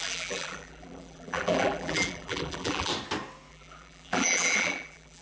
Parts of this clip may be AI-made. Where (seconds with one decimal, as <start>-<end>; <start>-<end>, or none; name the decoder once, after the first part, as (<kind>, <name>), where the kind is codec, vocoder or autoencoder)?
0.0-2.9 (vocoder, BigVGAN v2); 3.5-5.2